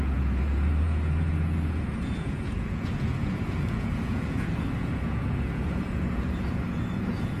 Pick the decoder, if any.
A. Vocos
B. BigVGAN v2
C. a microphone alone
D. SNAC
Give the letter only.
A